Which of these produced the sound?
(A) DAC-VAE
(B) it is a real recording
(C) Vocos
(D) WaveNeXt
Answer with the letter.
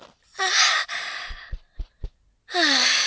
B